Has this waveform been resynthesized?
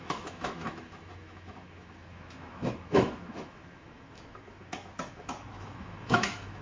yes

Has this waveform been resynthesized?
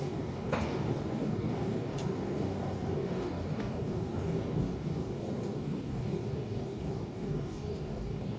yes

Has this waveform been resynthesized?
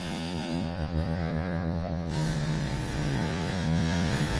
yes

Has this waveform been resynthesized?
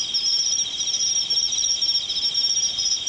no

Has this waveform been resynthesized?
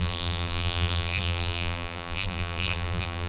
yes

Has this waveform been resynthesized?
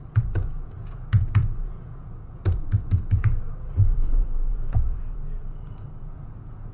yes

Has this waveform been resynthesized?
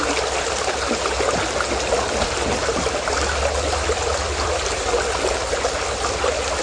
no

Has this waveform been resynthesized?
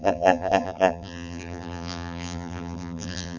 yes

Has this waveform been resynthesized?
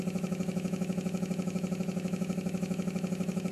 yes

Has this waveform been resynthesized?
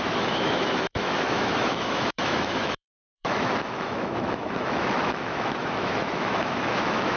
yes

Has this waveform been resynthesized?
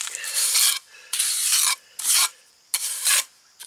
no